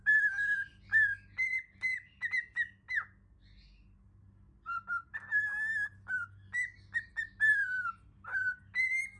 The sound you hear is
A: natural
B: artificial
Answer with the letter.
A